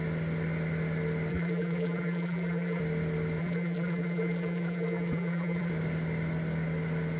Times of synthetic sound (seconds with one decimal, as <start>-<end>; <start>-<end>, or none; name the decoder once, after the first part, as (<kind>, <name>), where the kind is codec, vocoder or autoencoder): 1.3-2.8 (vocoder, BigVGAN v2); 3.4-5.7